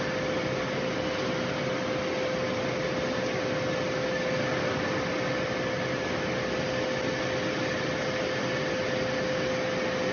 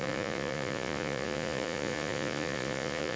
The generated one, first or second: second